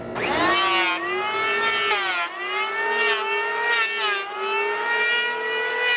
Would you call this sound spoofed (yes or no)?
no